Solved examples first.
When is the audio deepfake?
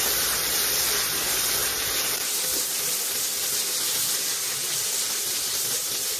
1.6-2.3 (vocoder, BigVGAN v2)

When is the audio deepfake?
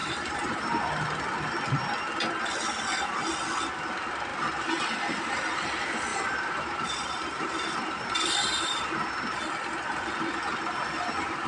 0.0-0.8 (vocoder, BigVGAN v2); 6.1-8.9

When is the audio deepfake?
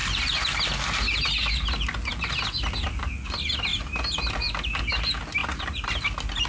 3.7-4.8 (vocoder, BigVGAN v2); 5.4-6.5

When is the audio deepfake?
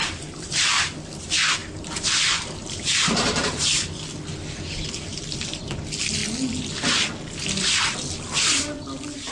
0.0-0.8 (vocoder, BigVGAN v2); 1.6-3.6; 5.1-5.6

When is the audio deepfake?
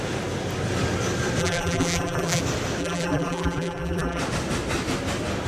1.4-2.4 (vocoder, BigVGAN v2); 2.8-4.2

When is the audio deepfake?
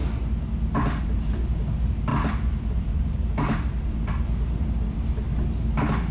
2.1-4.1 (vocoder, BigVGAN v2)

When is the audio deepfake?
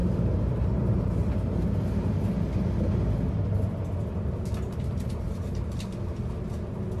0.0-1.6 (vocoder, BigVGAN v2)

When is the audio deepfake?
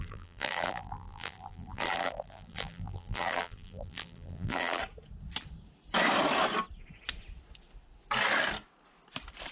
0.0-4.8 (vocoder, BigVGAN v2)